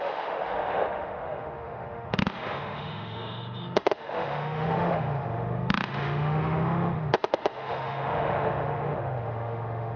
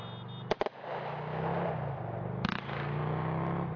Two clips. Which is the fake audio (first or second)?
first